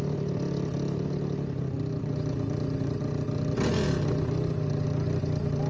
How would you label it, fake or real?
real